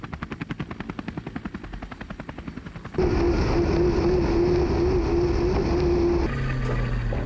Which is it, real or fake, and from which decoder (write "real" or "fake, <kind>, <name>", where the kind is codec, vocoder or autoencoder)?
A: real